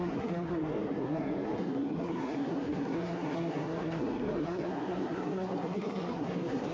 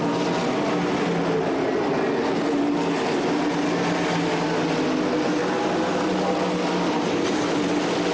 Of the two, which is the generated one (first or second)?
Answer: first